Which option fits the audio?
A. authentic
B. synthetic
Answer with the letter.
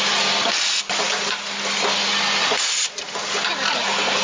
A